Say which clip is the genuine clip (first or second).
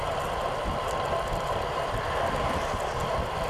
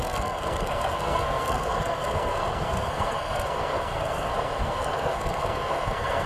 first